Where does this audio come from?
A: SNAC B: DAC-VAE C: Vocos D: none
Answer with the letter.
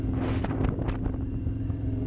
D